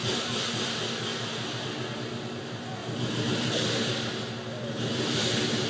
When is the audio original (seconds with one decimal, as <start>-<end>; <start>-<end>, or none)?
0.0-5.7